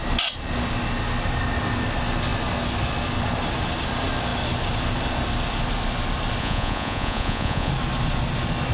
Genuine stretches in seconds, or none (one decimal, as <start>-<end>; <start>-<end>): 0.0-6.4; 7.7-8.7